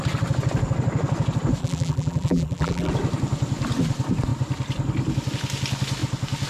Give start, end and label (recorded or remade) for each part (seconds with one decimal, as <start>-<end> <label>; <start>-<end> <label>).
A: 0.0-1.6 recorded; 1.6-2.9 remade; 2.9-6.5 recorded